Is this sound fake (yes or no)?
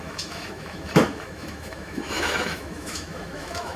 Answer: yes